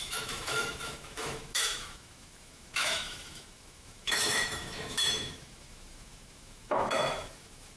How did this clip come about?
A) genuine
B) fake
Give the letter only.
B